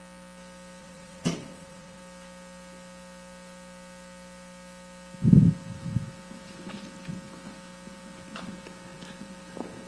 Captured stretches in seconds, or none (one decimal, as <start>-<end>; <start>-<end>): 0.0-0.8; 2.0-9.9